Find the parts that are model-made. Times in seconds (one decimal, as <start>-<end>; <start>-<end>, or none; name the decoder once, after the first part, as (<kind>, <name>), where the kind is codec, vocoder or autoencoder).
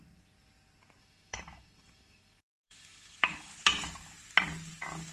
1.0-3.5 (autoencoder, DAC-VAE)